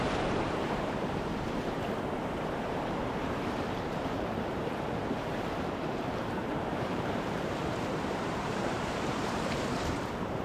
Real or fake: fake